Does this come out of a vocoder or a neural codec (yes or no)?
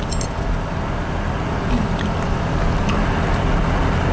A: no